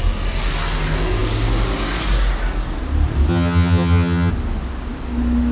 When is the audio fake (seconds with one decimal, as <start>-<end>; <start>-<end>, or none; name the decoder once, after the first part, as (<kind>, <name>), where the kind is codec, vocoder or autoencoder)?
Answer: 3.3-4.3 (vocoder, HiFi-GAN)